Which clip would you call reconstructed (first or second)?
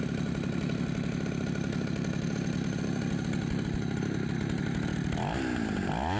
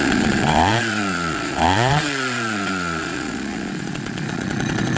second